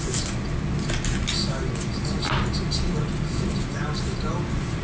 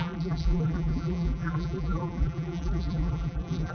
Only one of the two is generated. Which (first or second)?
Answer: second